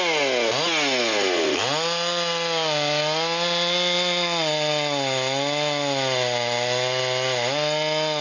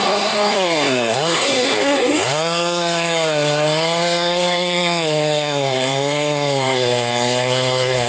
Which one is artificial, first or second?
second